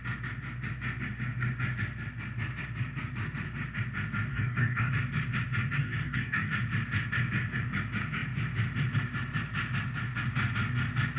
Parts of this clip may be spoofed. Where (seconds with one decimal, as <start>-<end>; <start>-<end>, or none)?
4.3-4.9; 5.8-6.5